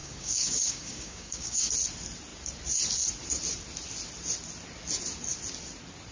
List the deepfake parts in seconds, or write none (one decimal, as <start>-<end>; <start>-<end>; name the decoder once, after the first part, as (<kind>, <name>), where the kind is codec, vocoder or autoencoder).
0.0-1.7 (codec, DAC)

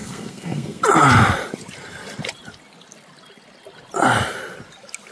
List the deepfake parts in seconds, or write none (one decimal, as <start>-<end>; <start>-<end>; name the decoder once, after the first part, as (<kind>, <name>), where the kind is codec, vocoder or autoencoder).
0.0-0.8 (codec, SNAC)

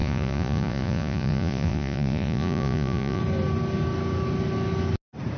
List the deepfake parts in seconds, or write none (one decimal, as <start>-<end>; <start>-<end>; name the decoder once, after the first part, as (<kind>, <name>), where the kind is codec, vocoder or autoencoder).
0.0-3.2 (vocoder, Vocos)

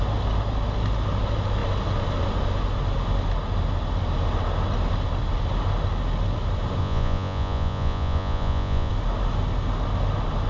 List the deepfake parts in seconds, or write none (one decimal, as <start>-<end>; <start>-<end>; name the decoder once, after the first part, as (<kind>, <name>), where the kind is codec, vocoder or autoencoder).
6.8-8.9 (vocoder, Vocos)

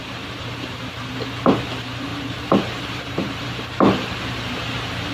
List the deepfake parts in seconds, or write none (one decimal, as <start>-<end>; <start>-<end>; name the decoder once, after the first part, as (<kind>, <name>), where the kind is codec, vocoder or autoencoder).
2.1-5.1 (vocoder, BigVGAN v2)